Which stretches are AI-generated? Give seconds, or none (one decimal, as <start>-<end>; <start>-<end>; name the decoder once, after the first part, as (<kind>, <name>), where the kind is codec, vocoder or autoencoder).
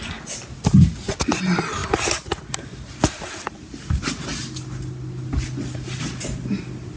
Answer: none